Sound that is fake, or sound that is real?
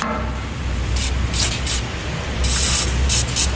real